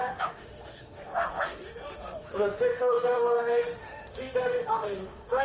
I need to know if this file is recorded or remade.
remade